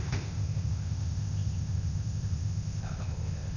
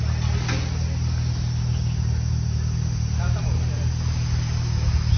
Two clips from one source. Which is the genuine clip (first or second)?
second